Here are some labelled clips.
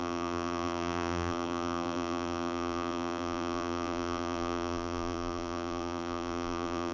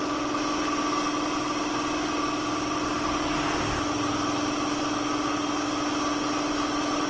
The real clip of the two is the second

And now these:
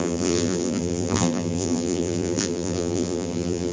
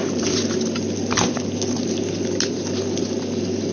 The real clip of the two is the second